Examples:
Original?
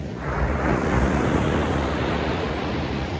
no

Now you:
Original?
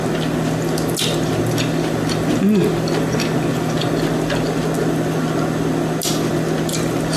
yes